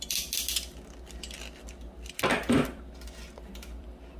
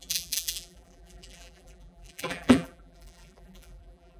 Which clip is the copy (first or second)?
second